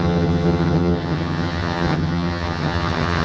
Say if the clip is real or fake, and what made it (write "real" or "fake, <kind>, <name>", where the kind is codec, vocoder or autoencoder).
fake, vocoder, HiFi-GAN